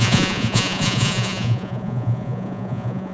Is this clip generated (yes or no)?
yes